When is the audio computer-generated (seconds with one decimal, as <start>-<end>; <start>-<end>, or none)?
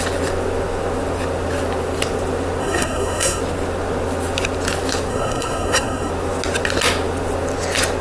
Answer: 2.6-3.4; 5.1-6.1